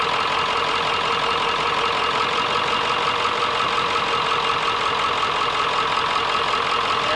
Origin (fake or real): real